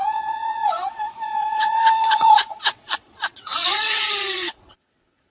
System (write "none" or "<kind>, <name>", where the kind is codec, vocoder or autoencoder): vocoder, WaveNeXt